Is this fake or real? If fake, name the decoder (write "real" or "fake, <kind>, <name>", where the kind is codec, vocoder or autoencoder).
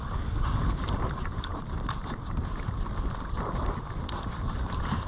real